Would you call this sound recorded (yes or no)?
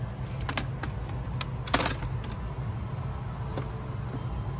yes